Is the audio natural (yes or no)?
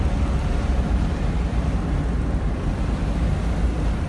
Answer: yes